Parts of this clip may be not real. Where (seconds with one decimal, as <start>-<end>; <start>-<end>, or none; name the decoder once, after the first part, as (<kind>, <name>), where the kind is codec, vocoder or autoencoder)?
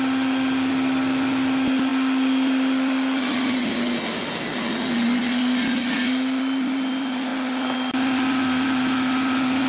none